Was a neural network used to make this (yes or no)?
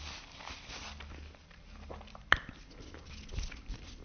no